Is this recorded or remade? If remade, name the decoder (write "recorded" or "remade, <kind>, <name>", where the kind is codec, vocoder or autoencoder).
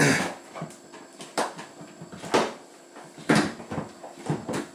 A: recorded